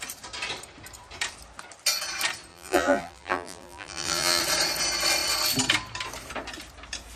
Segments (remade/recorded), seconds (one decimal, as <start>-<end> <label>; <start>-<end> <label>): 0.0-2.5 recorded; 2.5-4.4 remade; 4.4-7.2 recorded